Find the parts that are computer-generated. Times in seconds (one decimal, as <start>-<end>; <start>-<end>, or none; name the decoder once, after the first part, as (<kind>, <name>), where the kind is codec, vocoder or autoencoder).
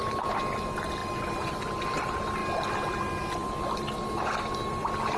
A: none